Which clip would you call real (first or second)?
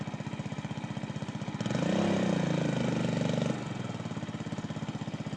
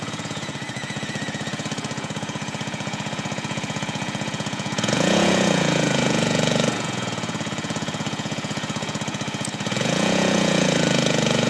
first